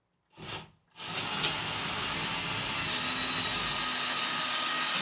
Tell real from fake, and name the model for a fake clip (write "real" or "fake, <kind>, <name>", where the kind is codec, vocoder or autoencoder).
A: real